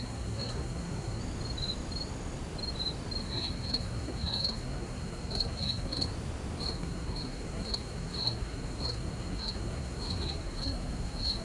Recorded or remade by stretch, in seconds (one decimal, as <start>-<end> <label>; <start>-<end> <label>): 0.0-1.2 remade; 1.2-3.2 recorded; 3.2-6.1 remade; 6.1-6.6 recorded; 6.6-11.4 remade